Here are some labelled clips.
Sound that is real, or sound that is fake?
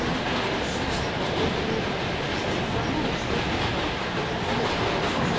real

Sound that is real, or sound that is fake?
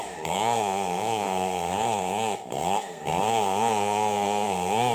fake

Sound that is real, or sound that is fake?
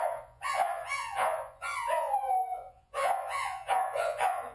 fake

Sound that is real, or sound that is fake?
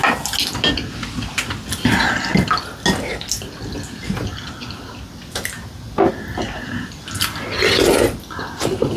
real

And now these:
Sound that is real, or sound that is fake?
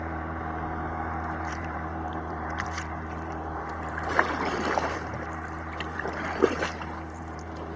fake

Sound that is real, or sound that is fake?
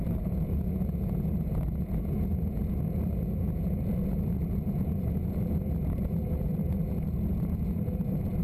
fake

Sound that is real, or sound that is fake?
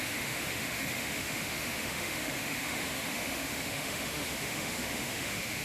fake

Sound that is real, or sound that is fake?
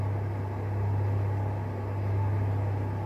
real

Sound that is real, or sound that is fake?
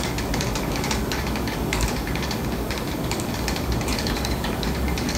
fake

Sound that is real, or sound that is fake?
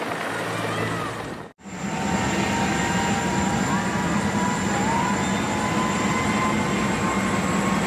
real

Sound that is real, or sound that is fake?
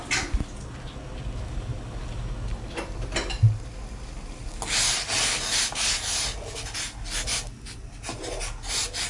real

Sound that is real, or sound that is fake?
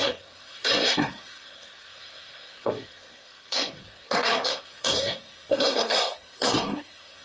fake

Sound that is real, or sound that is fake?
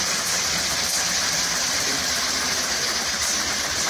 fake